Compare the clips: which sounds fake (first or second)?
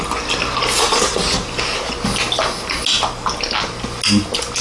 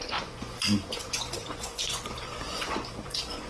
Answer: second